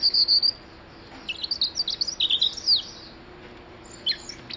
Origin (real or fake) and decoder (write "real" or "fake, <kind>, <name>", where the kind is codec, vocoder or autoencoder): real